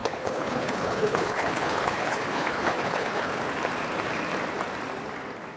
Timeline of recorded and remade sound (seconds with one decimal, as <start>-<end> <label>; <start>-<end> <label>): 0.0-3.4 remade; 3.4-5.6 recorded